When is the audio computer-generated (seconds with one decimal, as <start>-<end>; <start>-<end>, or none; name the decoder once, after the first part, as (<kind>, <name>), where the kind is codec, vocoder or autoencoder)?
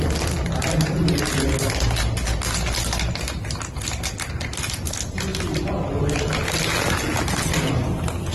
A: none